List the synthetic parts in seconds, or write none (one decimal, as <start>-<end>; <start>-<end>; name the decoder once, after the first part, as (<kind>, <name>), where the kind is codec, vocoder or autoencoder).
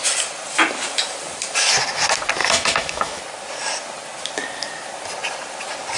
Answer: 2.4-3.2 (autoencoder, DAC-VAE)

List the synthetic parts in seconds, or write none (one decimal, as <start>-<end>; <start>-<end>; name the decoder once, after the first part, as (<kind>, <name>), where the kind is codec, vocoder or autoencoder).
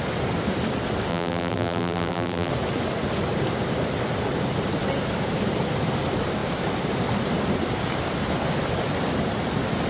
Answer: 1.1-2.5 (vocoder, BigVGAN v2)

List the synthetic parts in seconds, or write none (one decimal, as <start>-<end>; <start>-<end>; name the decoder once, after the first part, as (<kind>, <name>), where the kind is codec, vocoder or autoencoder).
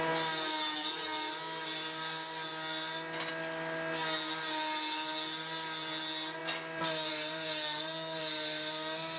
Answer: none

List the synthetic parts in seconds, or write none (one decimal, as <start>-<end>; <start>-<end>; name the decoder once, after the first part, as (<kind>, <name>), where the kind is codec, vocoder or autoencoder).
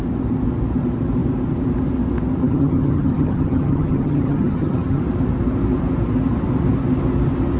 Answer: 2.4-5.0 (vocoder, HiFi-GAN)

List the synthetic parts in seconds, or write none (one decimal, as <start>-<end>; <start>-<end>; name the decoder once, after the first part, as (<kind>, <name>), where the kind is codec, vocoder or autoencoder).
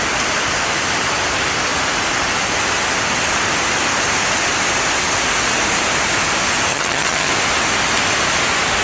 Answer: 6.7-7.3 (vocoder, HiFi-GAN)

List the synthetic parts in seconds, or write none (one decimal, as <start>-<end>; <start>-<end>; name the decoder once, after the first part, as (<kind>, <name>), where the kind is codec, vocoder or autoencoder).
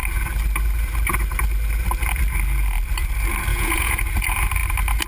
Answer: 3.5-4.0 (vocoder, Vocos)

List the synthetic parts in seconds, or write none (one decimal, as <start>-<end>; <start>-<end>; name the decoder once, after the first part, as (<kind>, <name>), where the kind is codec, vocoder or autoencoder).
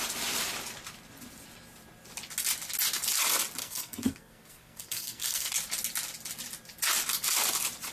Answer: 3.6-5.5 (codec, SNAC)